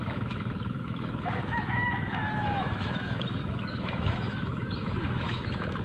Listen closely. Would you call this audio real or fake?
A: fake